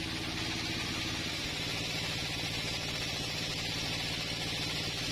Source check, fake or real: real